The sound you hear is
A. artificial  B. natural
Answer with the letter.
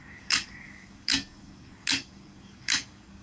A